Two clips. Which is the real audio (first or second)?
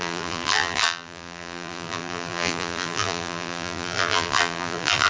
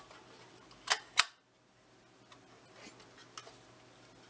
second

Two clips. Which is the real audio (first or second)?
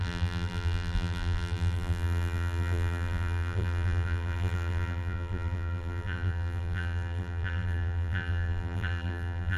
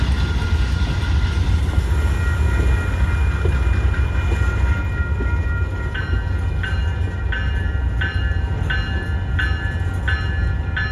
second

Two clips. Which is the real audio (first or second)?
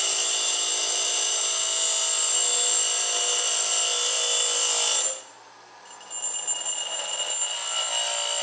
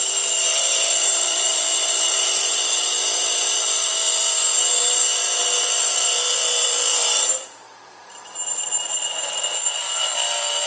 first